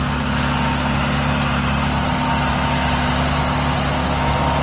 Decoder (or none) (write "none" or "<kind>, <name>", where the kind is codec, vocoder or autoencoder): none